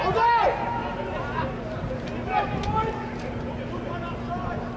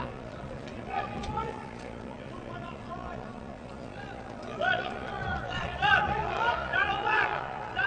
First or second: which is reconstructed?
second